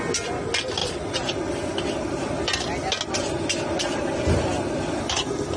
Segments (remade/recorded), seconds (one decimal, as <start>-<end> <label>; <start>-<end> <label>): 0.0-5.6 recorded